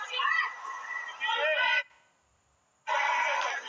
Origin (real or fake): real